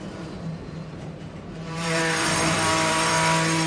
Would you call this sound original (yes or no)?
no